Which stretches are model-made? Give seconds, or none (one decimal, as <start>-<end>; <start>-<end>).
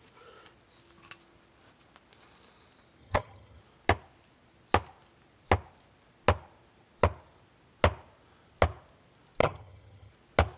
3.0-3.6; 9.4-10.1